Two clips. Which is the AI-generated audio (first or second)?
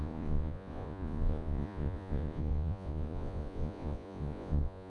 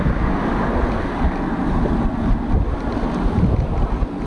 first